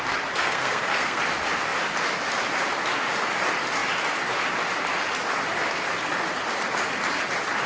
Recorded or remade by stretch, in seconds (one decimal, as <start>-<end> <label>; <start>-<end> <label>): 0.0-0.4 recorded; 0.4-1.2 remade; 1.2-7.7 recorded